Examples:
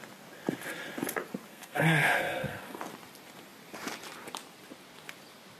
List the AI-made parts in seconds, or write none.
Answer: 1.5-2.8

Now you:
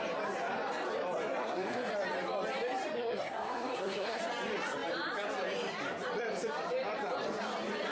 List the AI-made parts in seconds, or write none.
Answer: 1.4-1.9; 3.0-4.2

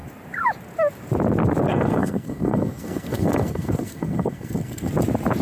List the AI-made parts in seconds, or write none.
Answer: 1.7-4.9

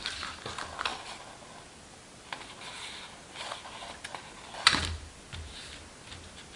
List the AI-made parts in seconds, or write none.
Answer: none